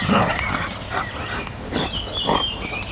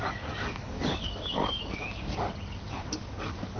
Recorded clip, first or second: first